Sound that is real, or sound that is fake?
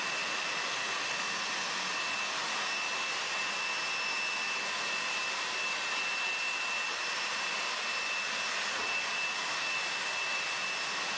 real